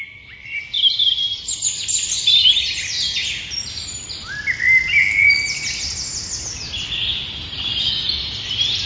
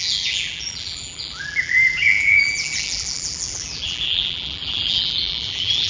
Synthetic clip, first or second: second